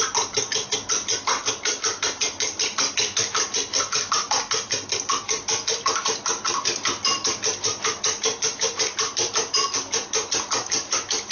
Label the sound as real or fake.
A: real